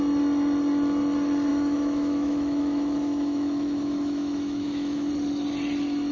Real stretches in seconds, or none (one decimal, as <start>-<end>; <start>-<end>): 0.0-1.5; 5.1-6.1